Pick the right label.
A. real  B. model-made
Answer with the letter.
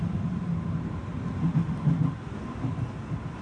A